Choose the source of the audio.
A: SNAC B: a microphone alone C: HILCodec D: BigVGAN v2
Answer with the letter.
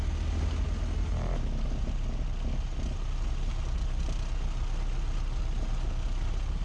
B